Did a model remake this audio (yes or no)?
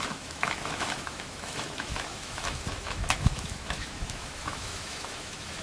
yes